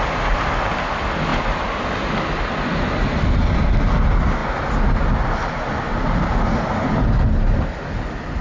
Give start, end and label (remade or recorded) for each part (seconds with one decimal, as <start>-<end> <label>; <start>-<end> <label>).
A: 0.0-8.4 recorded